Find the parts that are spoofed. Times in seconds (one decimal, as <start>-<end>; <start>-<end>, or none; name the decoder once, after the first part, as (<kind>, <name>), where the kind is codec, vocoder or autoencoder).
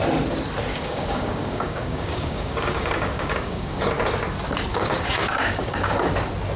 0.7-3.9 (codec, DAC); 4.7-6.1